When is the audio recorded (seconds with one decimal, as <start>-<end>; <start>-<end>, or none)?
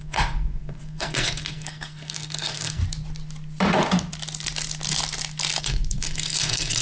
2.8-5.6